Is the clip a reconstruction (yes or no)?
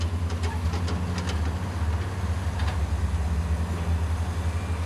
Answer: no